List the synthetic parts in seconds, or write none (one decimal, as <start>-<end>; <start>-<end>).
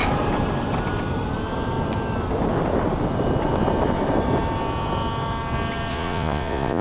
5.9-6.8